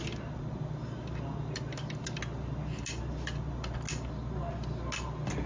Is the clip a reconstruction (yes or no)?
no